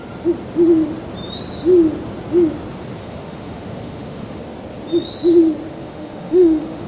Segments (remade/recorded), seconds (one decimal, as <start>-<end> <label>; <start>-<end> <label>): 0.0-3.0 recorded; 3.0-4.4 remade; 4.4-5.7 recorded; 5.7-6.9 remade